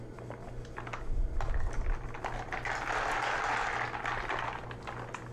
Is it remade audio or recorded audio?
recorded